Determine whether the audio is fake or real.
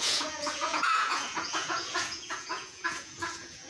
fake